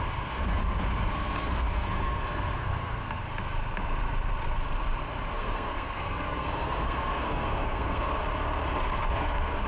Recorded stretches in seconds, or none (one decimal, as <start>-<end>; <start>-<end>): 0.6-1.1; 3.2-5.3; 8.2-9.1